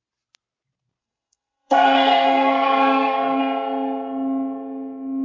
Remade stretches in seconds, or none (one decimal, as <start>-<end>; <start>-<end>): 1.0-3.4